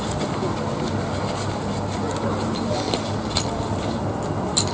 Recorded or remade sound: recorded